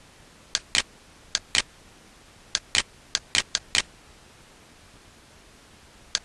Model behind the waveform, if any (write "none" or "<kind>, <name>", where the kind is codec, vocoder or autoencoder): none